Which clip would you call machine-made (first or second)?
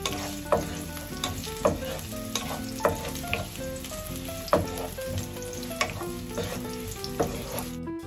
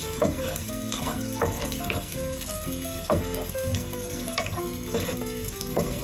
second